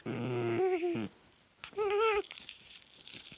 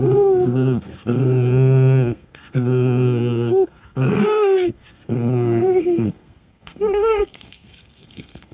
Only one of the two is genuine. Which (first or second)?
first